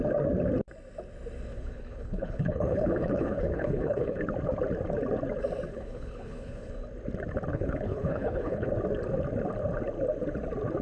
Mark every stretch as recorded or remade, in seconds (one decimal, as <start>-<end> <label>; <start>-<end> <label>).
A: 0.0-1.5 recorded; 1.5-4.2 remade; 4.2-5.7 recorded; 5.7-6.7 remade; 6.7-7.5 recorded; 7.5-8.7 remade; 8.7-10.8 recorded